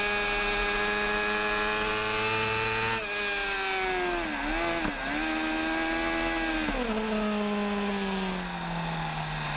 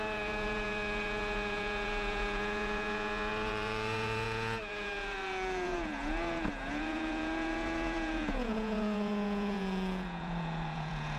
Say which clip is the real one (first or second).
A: first